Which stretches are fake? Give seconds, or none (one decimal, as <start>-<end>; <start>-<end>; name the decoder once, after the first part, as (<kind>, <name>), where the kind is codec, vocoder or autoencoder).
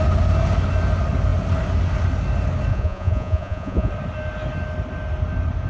2.7-3.9 (vocoder, Vocos)